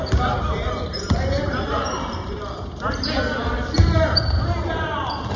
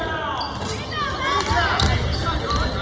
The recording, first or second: second